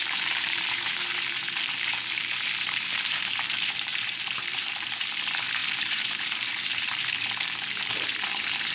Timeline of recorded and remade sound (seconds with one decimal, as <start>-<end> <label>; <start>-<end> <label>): 0.0-8.7 remade